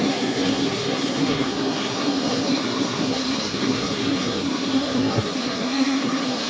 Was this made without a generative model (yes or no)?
no